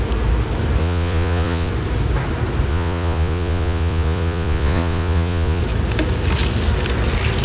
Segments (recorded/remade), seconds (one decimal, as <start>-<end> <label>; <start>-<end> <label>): 0.0-0.8 recorded; 0.8-1.7 remade; 1.7-2.7 recorded; 2.7-5.6 remade; 5.6-7.4 recorded